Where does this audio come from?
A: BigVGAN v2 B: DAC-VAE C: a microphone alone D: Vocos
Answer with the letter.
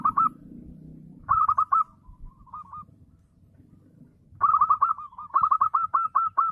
C